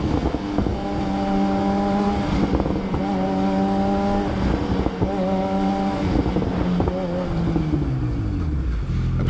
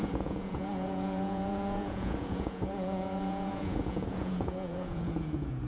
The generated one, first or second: second